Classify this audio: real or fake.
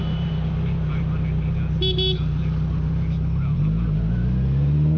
real